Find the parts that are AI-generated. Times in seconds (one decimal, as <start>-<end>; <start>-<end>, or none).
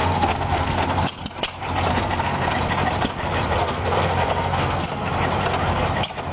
0.0-0.8; 1.9-2.5; 3.6-5.1